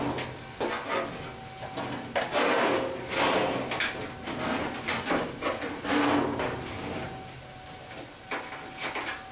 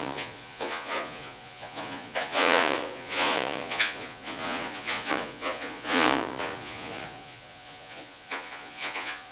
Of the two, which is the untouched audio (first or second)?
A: first